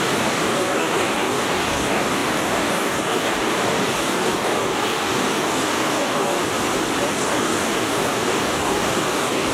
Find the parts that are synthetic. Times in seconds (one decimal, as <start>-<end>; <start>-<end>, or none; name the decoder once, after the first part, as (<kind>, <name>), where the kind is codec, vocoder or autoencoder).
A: 0.0-6.4 (codec, DAC); 7.1-9.5